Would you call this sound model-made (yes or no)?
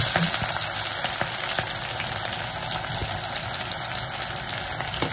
no